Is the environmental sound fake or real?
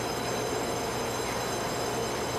real